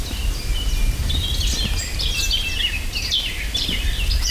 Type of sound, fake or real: real